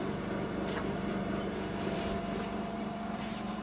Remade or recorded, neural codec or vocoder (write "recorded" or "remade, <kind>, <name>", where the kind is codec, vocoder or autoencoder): remade, vocoder, BigVGAN v2